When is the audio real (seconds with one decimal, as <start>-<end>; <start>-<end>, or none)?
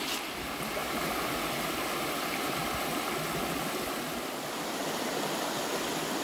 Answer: 0.0-6.2